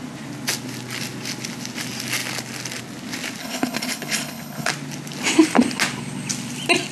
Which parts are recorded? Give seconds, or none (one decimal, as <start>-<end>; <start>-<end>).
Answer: 0.0-3.4; 4.7-6.9